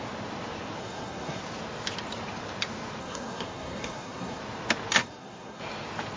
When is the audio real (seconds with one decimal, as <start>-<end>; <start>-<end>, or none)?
0.0-0.8; 1.4-3.0; 4.4-5.0; 5.6-6.2